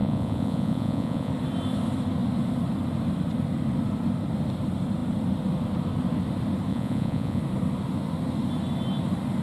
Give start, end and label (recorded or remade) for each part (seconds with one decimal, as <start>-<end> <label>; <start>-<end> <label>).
0.0-1.3 remade; 1.3-6.7 recorded; 6.7-7.4 remade; 7.4-9.4 recorded